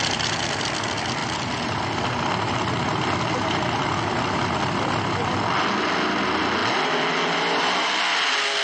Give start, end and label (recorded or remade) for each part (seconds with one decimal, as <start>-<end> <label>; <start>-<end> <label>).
0.0-8.6 recorded